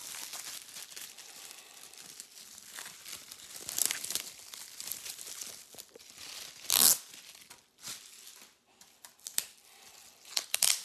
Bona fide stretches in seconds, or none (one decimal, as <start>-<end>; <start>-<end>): 0.0-10.8